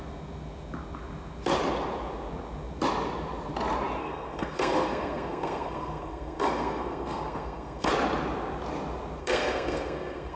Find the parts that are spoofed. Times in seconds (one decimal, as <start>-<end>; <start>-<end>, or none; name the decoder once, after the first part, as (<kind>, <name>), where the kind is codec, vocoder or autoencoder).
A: 4.0-7.9 (codec, SNAC); 9.2-10.4